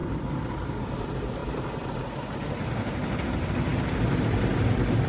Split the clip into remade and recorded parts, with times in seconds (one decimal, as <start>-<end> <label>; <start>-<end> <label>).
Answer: 0.0-0.5 remade; 0.5-1.4 recorded; 1.4-2.8 remade; 2.8-5.1 recorded